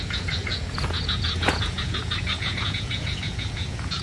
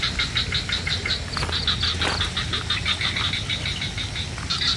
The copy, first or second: first